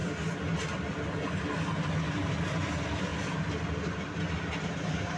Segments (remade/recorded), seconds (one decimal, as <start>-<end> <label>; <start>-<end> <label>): 0.0-5.2 recorded